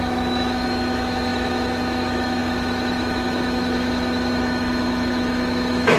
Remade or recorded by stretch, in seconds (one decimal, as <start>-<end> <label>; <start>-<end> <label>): 0.0-6.0 remade